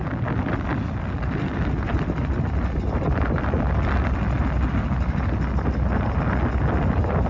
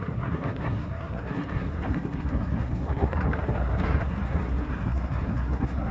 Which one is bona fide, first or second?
first